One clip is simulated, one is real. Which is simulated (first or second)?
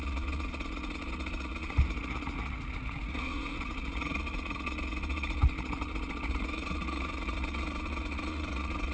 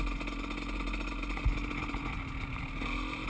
first